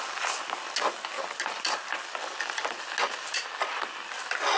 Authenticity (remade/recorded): recorded